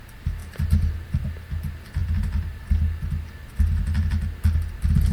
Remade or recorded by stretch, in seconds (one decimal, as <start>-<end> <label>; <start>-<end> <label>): 0.0-0.4 recorded; 0.4-1.3 remade; 1.3-2.0 recorded; 2.0-2.6 remade; 2.6-5.1 recorded